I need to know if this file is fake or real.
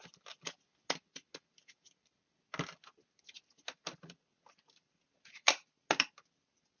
real